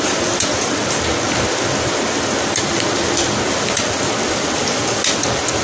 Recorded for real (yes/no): yes